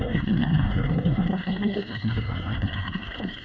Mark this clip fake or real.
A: fake